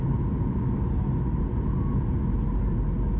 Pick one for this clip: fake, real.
real